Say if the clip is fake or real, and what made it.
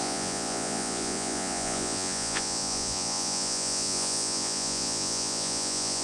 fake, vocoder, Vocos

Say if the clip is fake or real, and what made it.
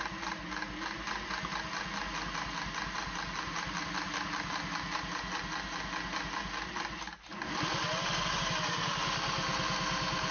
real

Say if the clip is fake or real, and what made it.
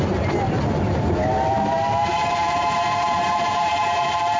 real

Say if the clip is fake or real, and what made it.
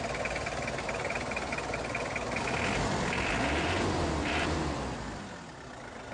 real